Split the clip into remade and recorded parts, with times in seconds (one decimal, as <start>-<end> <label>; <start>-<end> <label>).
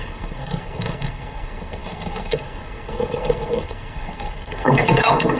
0.0-5.4 remade